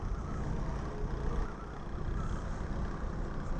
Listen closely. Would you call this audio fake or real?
real